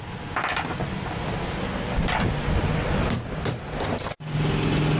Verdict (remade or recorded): recorded